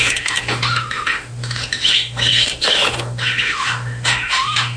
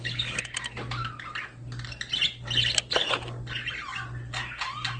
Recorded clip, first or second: second